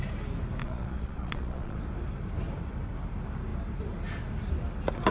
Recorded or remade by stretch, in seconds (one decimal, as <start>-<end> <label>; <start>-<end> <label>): 0.0-0.6 recorded; 0.6-1.8 remade; 1.8-5.1 recorded